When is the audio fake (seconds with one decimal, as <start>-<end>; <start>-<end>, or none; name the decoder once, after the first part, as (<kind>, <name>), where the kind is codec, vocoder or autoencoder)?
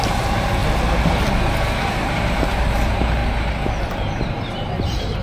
0.0-0.6 (vocoder, BigVGAN v2); 1.8-3.2; 3.9-5.2